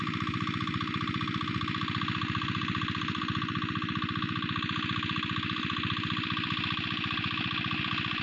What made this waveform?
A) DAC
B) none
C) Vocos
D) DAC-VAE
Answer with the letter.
B